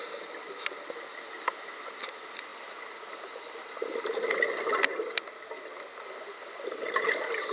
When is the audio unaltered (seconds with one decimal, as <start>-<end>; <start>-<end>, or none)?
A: 0.0-7.5